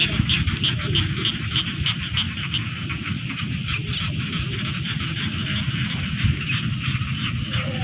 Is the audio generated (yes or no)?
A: no